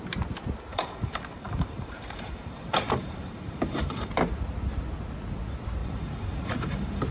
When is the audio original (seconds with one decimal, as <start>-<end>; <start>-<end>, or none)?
0.0-0.7; 4.1-5.8